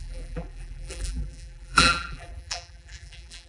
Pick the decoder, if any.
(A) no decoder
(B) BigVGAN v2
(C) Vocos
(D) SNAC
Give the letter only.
B